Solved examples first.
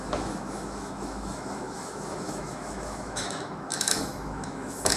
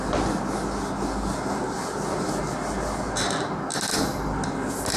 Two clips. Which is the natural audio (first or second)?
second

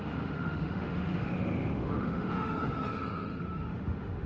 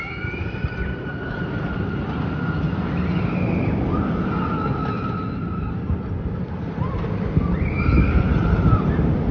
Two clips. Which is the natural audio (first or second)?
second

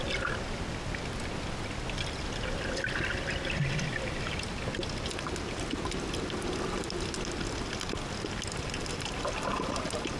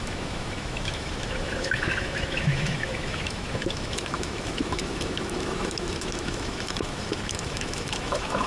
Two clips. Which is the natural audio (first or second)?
first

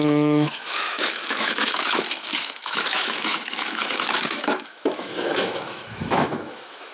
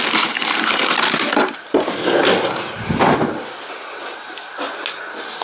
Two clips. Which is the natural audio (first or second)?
second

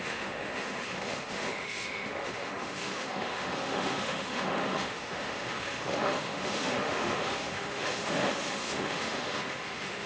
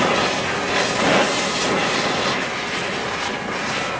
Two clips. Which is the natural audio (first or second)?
second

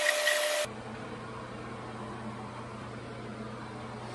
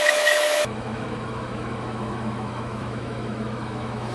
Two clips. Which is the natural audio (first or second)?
first